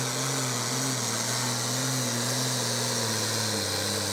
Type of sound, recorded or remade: recorded